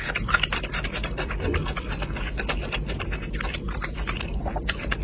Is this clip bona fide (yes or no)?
yes